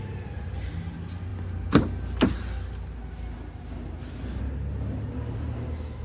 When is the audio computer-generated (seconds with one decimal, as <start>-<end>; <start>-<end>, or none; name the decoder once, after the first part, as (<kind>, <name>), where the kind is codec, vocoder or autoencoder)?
none